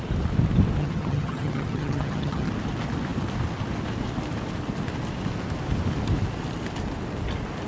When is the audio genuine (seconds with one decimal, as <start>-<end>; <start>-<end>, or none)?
0.0-0.8; 2.5-7.7